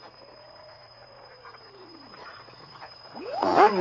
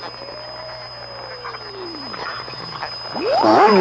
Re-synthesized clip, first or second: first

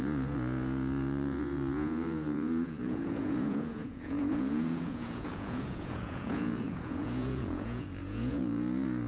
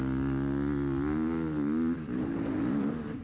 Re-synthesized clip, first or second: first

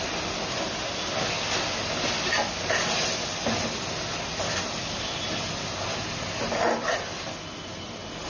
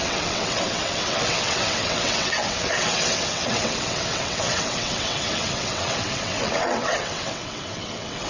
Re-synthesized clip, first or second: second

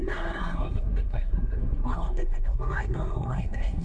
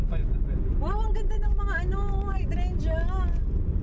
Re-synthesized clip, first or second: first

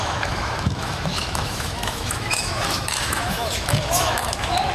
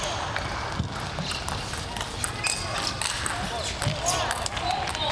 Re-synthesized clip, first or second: first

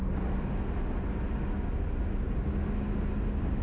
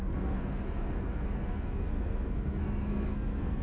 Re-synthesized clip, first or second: second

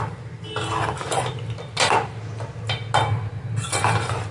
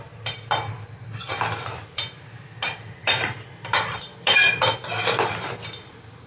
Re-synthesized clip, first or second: second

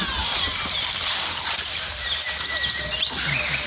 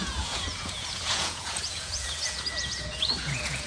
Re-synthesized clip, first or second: second